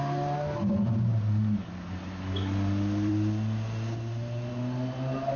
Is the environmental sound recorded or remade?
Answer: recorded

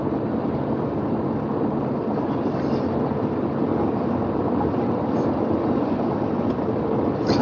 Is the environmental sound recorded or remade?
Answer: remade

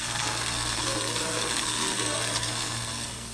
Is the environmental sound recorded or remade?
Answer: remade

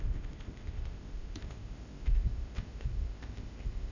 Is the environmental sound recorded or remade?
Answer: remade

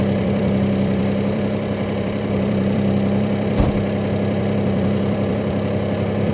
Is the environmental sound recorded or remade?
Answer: remade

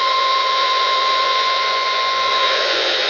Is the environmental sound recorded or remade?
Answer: remade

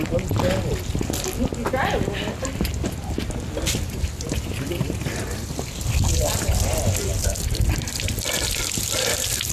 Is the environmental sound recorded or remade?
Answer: recorded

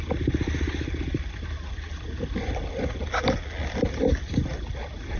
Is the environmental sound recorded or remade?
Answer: recorded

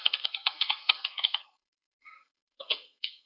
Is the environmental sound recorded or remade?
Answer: remade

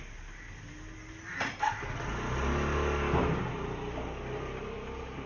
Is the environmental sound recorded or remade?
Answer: recorded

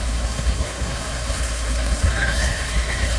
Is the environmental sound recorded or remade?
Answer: remade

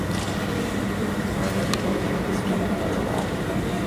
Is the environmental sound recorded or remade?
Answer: recorded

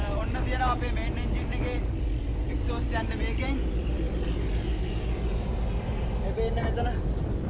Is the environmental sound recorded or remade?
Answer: recorded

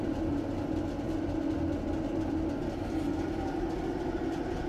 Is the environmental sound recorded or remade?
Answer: recorded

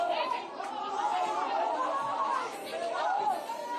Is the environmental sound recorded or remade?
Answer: recorded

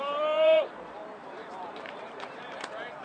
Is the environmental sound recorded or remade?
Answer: remade